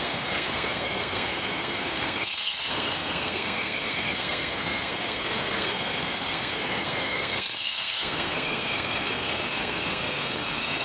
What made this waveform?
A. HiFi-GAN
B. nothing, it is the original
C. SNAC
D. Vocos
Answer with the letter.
C